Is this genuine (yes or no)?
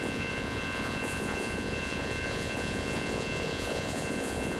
no